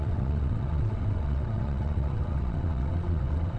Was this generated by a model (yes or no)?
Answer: yes